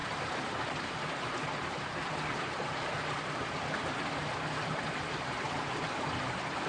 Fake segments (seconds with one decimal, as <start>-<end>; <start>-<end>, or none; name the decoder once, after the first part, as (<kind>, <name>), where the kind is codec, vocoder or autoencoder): none